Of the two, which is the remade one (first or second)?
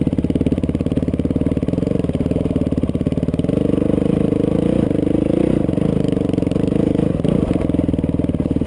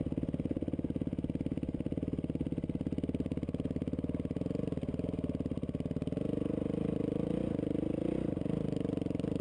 first